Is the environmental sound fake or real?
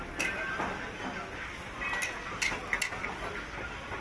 real